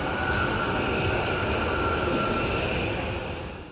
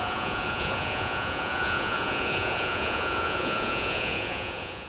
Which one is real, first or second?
first